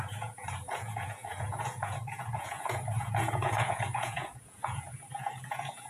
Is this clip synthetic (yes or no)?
yes